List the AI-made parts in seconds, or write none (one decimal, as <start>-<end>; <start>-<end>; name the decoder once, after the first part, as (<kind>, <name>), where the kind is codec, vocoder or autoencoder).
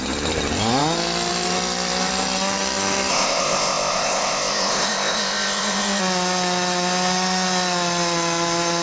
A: 3.1-6.0 (codec, ZipCodec)